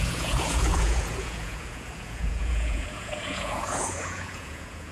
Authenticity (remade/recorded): remade